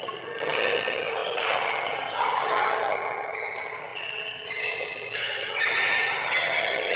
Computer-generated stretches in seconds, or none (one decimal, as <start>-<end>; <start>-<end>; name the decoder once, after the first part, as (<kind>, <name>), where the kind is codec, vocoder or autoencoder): 0.0-7.0 (vocoder, HiFi-GAN)